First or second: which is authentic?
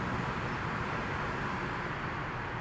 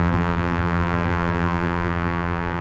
first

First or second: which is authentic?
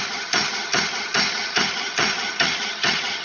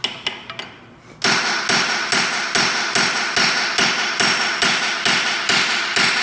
second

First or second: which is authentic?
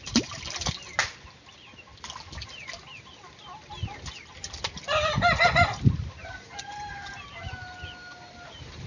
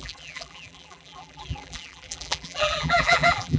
first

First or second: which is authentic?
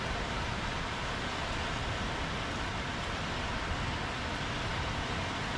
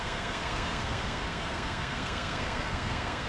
first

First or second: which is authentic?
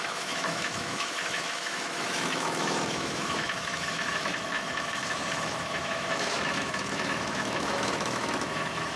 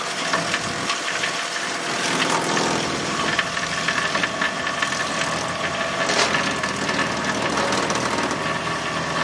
second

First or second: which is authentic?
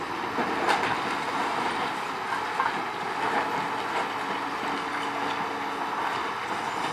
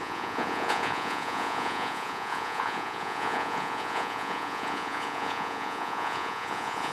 first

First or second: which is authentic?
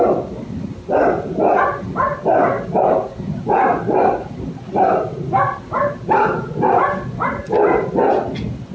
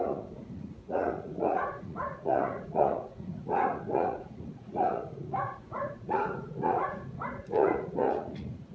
first